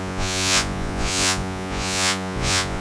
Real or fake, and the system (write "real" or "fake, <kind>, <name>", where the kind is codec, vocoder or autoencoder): fake, vocoder, Vocos